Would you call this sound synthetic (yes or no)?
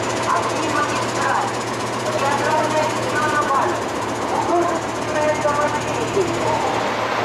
no